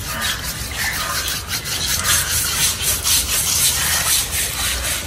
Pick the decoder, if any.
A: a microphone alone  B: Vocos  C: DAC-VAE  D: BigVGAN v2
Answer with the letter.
A